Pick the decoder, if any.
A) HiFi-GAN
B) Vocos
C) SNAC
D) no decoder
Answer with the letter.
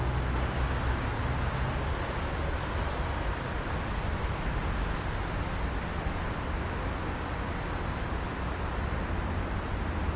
D